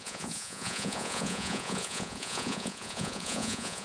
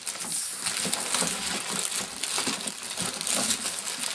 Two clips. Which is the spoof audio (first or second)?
first